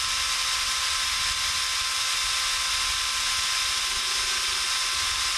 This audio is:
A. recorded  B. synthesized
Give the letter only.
A